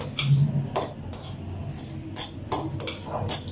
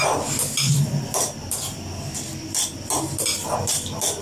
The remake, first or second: second